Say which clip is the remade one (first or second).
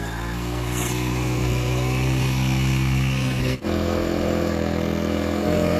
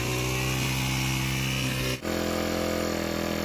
first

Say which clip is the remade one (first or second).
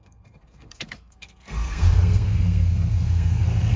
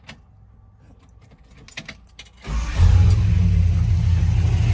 first